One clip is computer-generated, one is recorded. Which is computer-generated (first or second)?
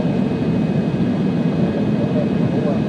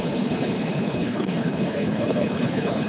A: second